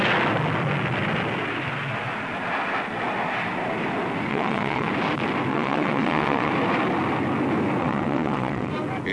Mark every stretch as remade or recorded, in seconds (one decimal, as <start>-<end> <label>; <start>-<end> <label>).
0.0-4.3 recorded; 4.3-4.9 remade; 4.9-5.5 recorded; 5.5-6.5 remade; 6.5-7.8 recorded; 7.8-8.7 remade; 8.7-9.1 recorded